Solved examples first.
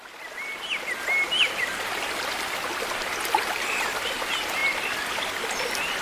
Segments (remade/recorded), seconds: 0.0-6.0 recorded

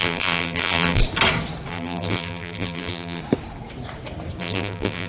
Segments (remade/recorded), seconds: 0.0-1.0 remade; 1.0-1.7 recorded; 1.7-3.2 remade; 3.2-4.4 recorded; 4.4-5.1 remade

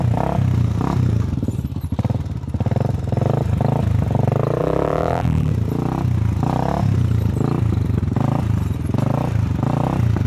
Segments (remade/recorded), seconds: 0.0-4.6 recorded; 4.6-5.5 remade; 5.5-10.3 recorded

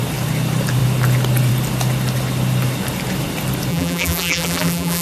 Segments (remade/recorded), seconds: 0.0-3.7 recorded; 3.7-5.0 remade

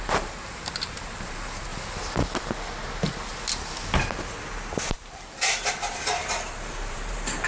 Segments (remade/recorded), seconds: 0.0-1.7 remade; 1.7-4.9 recorded; 4.9-7.5 remade

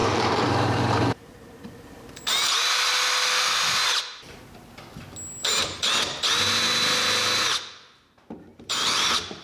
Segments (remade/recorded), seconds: 0.0-2.6 remade; 2.6-9.4 recorded

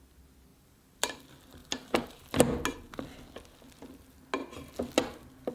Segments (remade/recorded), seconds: 0.0-0.5 recorded; 0.5-1.2 remade; 1.2-1.6 recorded; 1.6-2.2 remade; 2.2-5.5 recorded

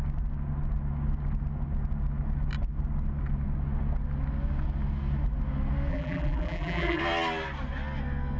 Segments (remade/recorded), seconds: 0.0-5.9 recorded; 5.9-7.0 remade; 7.0-8.4 recorded